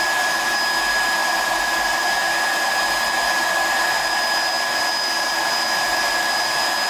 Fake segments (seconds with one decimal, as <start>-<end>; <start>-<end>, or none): none

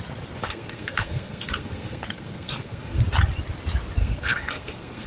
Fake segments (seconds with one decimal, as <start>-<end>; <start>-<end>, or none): 0.4-3.0; 4.0-5.1

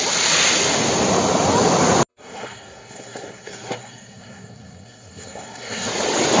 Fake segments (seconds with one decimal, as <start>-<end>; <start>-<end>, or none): 2.1-5.9

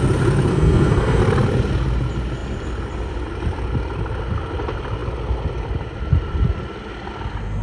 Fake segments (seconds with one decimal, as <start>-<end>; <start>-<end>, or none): 0.5-1.2

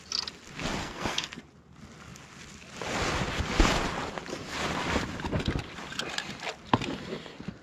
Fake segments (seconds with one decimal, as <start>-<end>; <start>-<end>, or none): 0.8-1.4

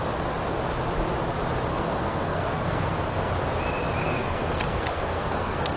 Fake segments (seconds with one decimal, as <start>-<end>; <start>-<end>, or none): 1.7-3.3; 4.0-5.8

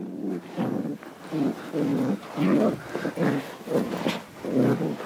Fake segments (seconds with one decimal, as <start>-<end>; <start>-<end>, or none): none

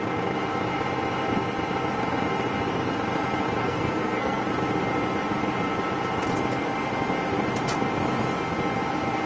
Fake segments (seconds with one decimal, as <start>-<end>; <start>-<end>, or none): 3.6-4.4